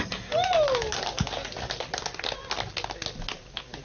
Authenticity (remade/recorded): recorded